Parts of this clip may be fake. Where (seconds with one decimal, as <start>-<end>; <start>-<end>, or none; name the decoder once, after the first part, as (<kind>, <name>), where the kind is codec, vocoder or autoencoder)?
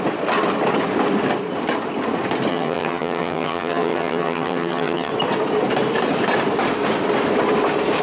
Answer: 2.5-5.1 (vocoder, HiFi-GAN)